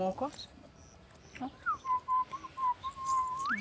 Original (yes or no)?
yes